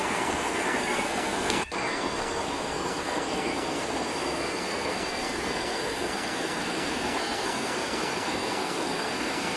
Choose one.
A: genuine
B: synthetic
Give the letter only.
B